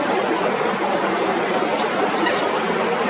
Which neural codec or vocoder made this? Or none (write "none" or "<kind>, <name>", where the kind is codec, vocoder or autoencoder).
vocoder, BigVGAN v2